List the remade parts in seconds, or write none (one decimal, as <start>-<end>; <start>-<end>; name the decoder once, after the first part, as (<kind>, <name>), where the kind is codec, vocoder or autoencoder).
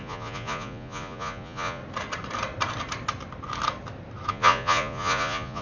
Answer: 0.0-1.8 (vocoder, Vocos); 4.3-5.6